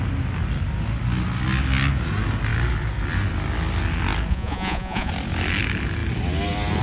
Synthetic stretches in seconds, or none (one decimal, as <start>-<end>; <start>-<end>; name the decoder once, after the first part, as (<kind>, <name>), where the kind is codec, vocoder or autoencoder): 4.3-5.1 (vocoder, Vocos)